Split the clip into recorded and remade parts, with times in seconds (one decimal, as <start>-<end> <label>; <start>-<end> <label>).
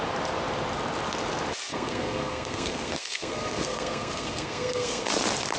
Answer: 0.0-1.7 recorded; 1.7-5.1 remade; 5.1-5.6 recorded